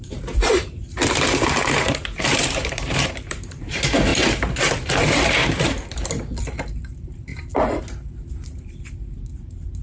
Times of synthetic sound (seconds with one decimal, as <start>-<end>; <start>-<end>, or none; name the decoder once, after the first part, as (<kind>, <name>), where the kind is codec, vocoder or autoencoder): 0.0-4.1 (vocoder, BigVGAN v2); 4.6-7.3; 8.1-9.8